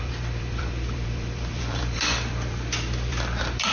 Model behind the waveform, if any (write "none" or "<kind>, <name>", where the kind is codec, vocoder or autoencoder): vocoder, BigVGAN v2